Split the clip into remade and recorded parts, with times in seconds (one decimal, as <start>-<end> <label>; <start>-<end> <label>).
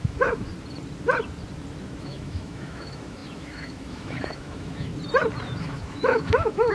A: 0.0-0.5 remade; 0.5-2.0 recorded; 2.0-4.9 remade; 4.9-5.6 recorded; 5.6-6.7 remade